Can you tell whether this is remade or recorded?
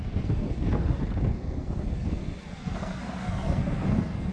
remade